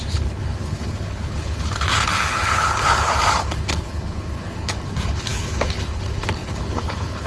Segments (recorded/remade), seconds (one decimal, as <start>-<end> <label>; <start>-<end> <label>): 0.0-7.3 remade